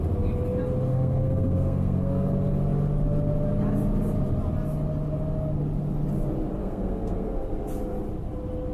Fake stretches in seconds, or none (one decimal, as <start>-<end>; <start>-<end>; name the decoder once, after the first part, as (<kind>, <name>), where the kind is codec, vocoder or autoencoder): 0.9-2.3 (codec, SNAC); 6.6-7.5